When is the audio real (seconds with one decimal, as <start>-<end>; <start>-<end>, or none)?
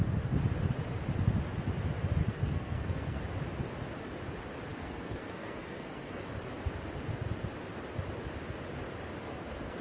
0.0-2.2; 3.2-4.7; 6.2-9.2